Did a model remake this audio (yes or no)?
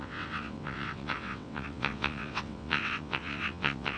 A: yes